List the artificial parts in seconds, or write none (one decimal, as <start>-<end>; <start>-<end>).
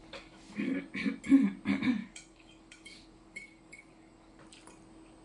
0.0-0.8; 2.0-4.4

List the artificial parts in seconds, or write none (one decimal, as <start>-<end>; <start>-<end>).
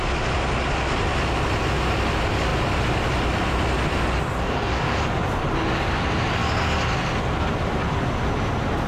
4.4-5.0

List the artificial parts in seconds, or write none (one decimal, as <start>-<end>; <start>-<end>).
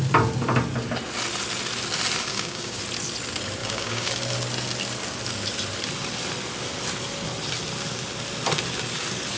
2.3-2.8; 3.6-4.1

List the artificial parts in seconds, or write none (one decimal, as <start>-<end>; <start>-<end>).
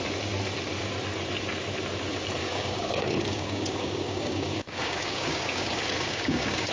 2.4-6.7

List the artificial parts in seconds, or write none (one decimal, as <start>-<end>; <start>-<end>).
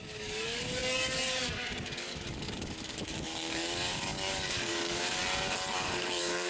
0.0-5.2; 5.7-6.5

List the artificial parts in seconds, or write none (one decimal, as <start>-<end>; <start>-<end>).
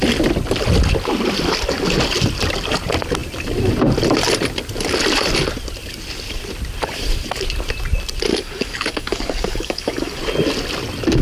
8.3-10.2